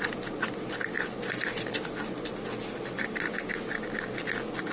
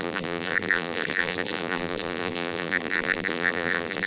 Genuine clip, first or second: first